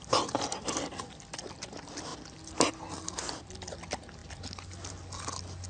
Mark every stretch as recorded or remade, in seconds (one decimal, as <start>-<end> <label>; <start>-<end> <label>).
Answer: 0.0-5.7 recorded